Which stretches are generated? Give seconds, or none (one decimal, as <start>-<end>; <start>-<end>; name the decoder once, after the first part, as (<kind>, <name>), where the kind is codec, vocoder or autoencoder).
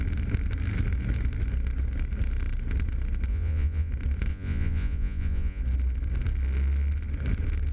3.3-3.9 (vocoder, Vocos); 4.3-5.6